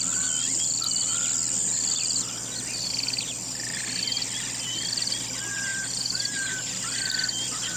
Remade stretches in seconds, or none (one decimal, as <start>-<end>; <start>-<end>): 5.7-6.8